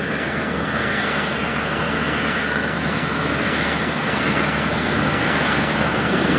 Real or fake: fake